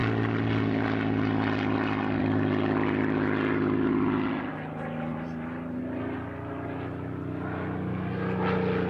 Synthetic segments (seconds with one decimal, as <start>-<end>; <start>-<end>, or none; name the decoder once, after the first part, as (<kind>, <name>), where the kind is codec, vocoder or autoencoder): 5.1-5.8 (vocoder, BigVGAN v2)